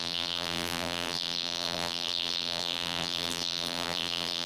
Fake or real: fake